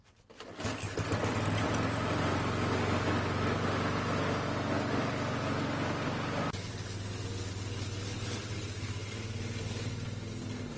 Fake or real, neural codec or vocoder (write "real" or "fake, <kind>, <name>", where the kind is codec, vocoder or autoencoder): real